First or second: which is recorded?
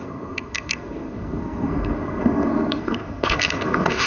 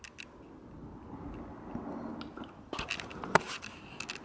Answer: second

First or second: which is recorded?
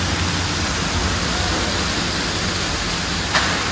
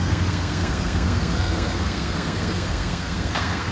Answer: first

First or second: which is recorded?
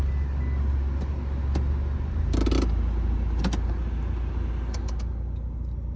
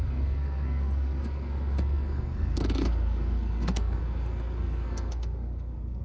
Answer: first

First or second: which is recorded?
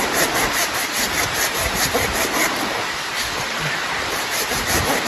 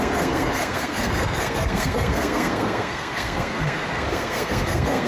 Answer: first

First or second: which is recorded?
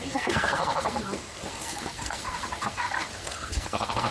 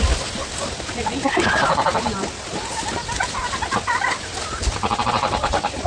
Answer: second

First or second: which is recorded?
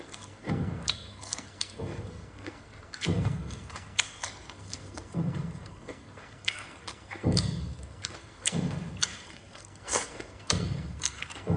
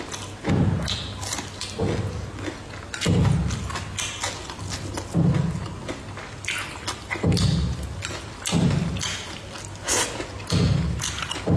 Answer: second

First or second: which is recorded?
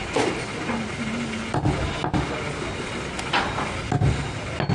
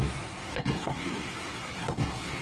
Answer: first